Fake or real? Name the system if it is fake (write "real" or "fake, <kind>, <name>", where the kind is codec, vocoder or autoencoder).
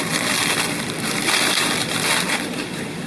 fake, vocoder, BigVGAN v2